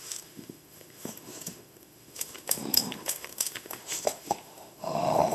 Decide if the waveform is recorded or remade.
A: remade